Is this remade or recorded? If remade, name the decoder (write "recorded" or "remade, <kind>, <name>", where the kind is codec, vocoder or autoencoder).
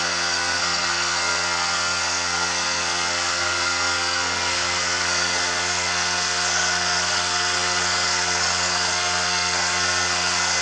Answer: remade, codec, SNAC